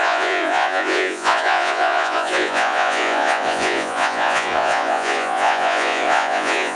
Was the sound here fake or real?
fake